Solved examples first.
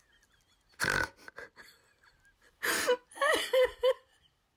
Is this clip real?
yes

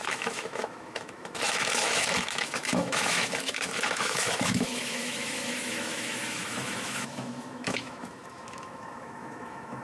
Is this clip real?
no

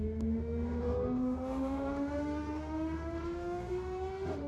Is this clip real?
no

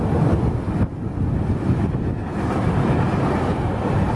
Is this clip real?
yes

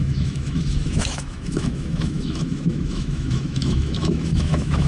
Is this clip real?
no